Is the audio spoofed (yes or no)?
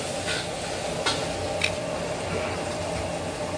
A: no